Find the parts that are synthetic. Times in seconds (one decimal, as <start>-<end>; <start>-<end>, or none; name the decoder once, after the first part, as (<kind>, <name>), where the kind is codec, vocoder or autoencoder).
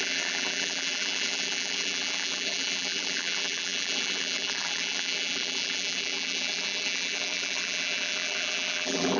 0.0-9.2 (vocoder, BigVGAN v2)